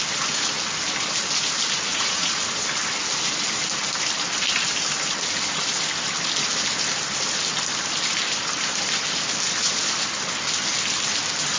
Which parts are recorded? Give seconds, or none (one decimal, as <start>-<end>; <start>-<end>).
0.0-1.9; 2.4-11.6